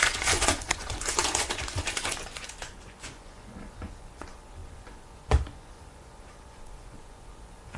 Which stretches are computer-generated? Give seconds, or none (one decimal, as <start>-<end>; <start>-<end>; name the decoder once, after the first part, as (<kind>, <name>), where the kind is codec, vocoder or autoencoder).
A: 0.0-7.8 (vocoder, Vocos)